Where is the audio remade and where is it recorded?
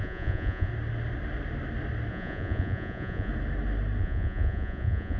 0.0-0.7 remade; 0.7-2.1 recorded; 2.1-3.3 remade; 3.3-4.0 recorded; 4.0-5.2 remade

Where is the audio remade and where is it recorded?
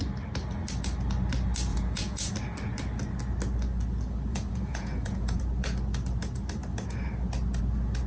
0.0-1.7 recorded; 1.7-2.3 remade; 2.3-4.3 recorded; 4.3-5.4 remade; 5.4-8.1 recorded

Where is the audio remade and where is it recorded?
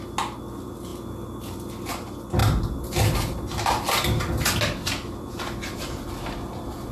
0.0-6.9 recorded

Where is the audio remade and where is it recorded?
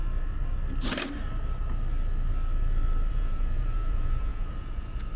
0.0-3.1 recorded; 3.1-5.2 remade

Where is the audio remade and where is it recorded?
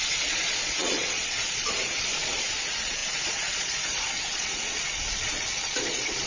0.0-2.1 remade; 2.1-2.6 recorded; 2.6-6.3 remade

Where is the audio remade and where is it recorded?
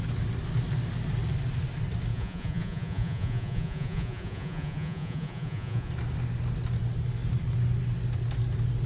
0.0-2.1 recorded; 2.1-5.9 remade; 5.9-8.9 recorded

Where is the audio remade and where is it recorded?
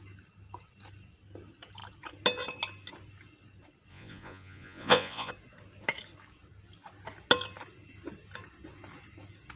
0.0-3.9 recorded; 3.9-5.3 remade; 5.3-9.6 recorded